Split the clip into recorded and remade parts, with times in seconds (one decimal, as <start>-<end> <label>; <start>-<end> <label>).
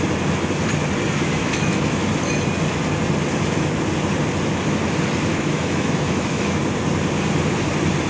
0.0-1.4 recorded; 1.4-2.1 remade; 2.1-5.3 recorded; 5.3-6.6 remade; 6.6-8.1 recorded